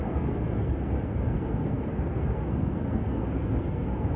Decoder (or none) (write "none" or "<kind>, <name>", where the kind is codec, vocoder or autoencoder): codec, SNAC